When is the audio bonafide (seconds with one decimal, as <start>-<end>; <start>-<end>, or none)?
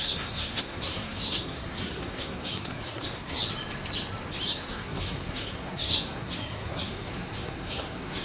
3.4-4.5